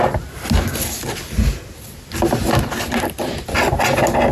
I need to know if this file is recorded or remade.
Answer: recorded